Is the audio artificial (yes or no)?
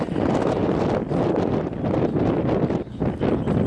no